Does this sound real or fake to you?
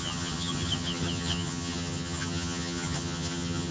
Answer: fake